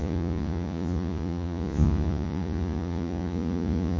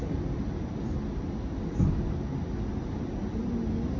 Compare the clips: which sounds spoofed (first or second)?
first